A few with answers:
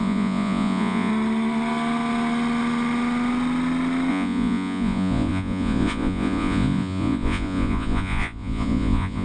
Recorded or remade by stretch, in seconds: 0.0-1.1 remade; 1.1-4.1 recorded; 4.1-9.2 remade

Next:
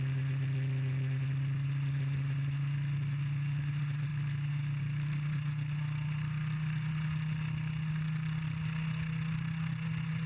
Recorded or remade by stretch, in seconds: 0.0-10.3 recorded

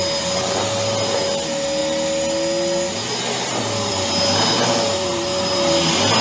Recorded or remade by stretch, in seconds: 0.0-6.2 recorded

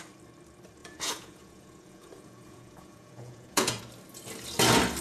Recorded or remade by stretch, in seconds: 0.0-0.8 recorded; 0.8-3.8 remade; 3.8-5.0 recorded